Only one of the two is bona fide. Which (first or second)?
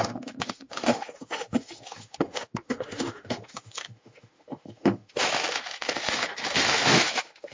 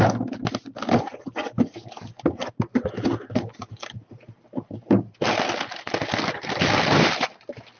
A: second